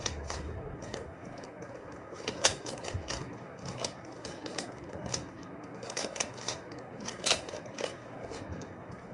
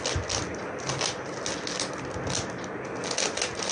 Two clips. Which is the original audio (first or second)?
second